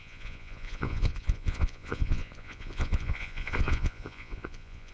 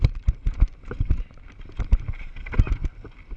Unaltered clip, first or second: second